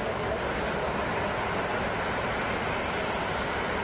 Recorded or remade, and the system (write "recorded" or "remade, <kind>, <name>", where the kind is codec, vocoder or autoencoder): remade, vocoder, BigVGAN v2